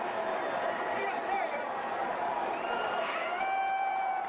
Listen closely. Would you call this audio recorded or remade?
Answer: remade